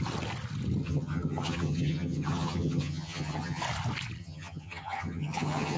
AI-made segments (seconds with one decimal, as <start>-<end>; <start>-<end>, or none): 0.8-3.6; 4.2-5.8